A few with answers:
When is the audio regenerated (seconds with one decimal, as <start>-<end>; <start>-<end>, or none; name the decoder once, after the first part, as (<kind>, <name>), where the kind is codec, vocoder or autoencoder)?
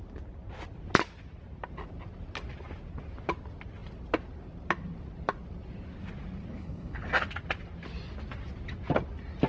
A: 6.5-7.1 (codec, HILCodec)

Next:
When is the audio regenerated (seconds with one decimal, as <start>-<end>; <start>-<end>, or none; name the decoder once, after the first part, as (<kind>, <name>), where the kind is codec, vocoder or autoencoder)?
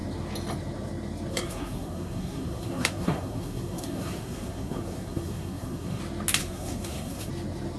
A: 1.3-6.0 (codec, SNAC); 6.4-7.3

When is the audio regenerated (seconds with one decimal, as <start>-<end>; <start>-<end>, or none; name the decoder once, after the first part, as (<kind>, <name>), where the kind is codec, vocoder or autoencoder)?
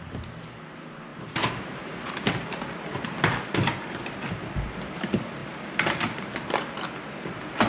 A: 1.1-2.1 (vocoder, BigVGAN v2)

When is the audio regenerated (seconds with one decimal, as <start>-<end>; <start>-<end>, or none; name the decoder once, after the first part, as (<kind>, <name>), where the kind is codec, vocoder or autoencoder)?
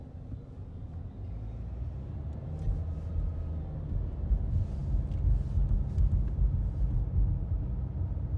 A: none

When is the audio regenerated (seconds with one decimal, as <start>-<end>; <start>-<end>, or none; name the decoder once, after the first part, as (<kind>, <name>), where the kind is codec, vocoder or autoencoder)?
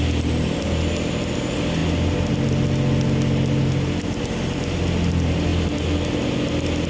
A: none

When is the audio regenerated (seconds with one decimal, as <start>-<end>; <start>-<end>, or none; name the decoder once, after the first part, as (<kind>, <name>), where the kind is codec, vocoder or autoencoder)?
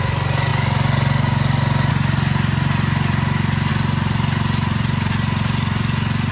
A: none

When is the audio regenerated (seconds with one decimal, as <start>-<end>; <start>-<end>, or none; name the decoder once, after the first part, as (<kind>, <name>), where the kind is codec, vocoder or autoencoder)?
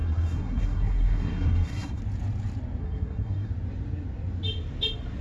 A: 0.0-2.0 (codec, SNAC); 2.8-3.5